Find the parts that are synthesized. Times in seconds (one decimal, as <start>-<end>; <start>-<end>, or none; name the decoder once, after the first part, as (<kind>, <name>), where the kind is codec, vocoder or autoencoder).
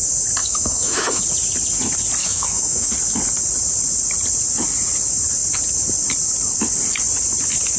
0.4-1.2 (autoencoder, DAC-VAE); 2.2-2.9